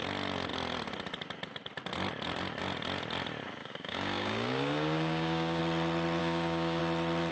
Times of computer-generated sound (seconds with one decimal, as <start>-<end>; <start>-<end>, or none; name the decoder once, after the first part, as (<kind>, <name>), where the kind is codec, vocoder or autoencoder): 3.6-5.6 (codec, DAC); 6.2-6.8